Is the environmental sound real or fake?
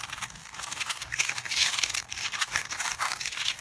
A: fake